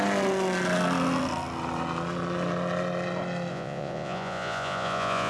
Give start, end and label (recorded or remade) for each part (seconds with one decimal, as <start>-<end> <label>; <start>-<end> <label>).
0.0-3.5 recorded; 3.5-5.3 remade